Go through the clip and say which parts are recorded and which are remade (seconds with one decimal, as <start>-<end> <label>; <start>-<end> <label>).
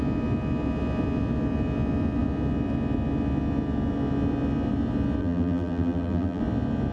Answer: 0.0-5.2 recorded; 5.2-6.4 remade; 6.4-6.9 recorded